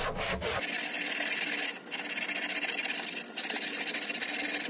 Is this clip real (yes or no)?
yes